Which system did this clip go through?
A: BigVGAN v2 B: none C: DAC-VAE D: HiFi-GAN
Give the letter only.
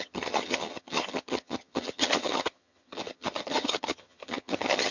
D